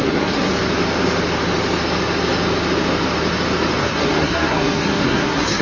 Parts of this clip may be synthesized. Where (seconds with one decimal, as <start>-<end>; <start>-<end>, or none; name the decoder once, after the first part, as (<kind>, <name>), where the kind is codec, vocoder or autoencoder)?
0.0-0.5 (codec, SNAC); 3.8-5.6